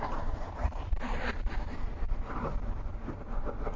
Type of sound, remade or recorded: remade